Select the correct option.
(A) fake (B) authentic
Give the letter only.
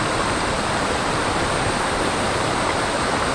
A